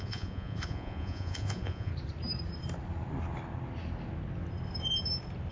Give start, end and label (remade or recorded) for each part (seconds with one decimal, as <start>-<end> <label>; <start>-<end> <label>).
0.0-1.9 remade; 1.9-5.5 recorded